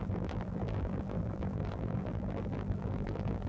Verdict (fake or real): fake